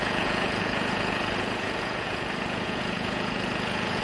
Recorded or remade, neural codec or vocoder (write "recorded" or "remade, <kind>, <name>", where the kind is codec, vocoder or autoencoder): remade, vocoder, Vocos